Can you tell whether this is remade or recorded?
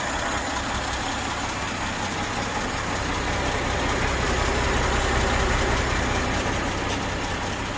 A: recorded